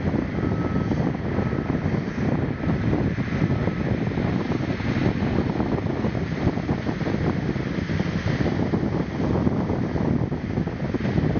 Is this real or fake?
real